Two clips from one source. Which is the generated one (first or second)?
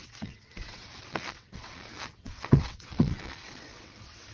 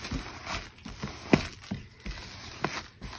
first